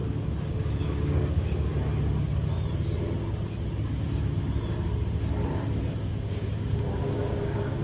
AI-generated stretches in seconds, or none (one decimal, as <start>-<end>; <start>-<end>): 0.5-1.7; 6.2-7.8